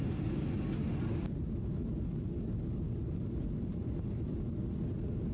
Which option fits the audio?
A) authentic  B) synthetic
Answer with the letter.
A